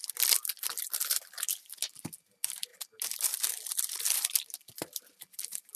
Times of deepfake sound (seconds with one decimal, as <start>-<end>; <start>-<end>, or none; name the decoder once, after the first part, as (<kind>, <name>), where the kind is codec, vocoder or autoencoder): 0.0-2.7 (vocoder, BigVGAN v2); 3.8-5.8